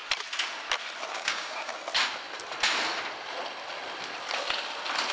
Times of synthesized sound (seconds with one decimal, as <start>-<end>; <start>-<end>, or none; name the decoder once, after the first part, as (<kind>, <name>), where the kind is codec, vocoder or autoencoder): 1.1-1.7 (codec, DAC)